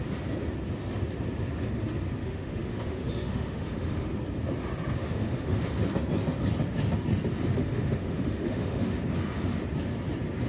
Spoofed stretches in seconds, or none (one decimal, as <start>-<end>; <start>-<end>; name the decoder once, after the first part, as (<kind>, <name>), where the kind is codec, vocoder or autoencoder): 2.2-4.1 (autoencoder, DAC-VAE); 5.0-5.6; 7.6-9.0